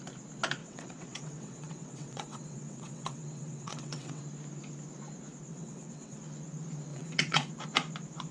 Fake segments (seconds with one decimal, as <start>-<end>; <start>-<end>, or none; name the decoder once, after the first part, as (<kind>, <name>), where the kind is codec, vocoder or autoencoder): 0.6-4.2 (vocoder, WaveNeXt); 5.5-6.2; 6.9-7.5